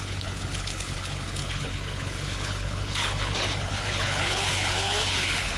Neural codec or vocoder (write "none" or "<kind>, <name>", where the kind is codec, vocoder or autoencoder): codec, HILCodec